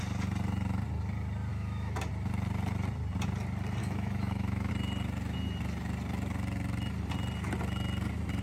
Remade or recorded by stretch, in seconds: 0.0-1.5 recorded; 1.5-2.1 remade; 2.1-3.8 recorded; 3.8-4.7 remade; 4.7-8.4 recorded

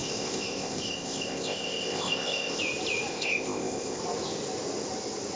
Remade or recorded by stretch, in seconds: 0.0-2.6 remade; 2.6-3.1 recorded; 3.1-4.0 remade; 4.0-5.4 recorded

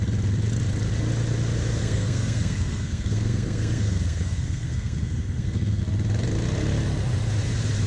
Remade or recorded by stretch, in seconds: 0.0-1.8 recorded; 1.8-5.8 remade; 5.8-7.9 recorded

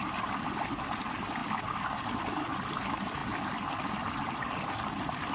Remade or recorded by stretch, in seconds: 0.0-5.3 recorded